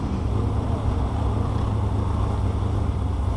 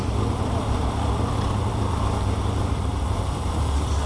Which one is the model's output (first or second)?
second